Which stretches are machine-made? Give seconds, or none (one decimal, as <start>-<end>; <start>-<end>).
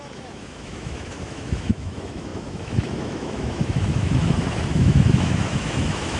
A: 0.0-6.2